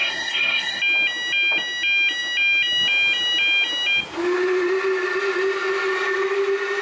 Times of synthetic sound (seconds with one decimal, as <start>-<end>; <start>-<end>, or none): 0.0-0.8